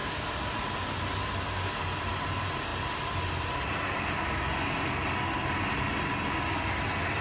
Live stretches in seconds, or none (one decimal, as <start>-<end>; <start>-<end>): 0.0-7.2